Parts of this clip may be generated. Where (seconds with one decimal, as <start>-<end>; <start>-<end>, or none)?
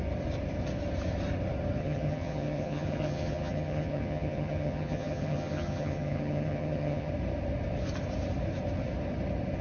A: 1.8-7.1